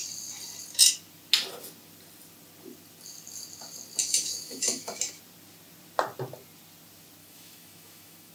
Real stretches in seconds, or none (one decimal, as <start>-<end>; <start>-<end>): 0.0-4.0; 5.0-7.2